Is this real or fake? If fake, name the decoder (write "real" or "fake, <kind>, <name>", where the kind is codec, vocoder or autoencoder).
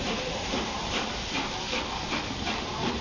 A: fake, vocoder, BigVGAN v2